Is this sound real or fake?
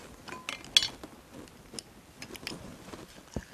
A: real